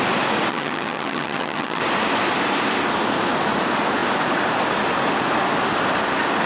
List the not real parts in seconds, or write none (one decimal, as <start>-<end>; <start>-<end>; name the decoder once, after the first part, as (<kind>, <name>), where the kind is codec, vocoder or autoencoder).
0.5-1.8 (vocoder, HiFi-GAN)